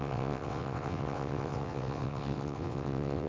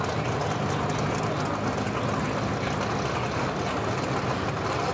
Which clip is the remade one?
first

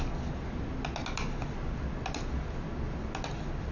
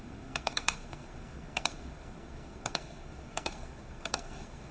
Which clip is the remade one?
second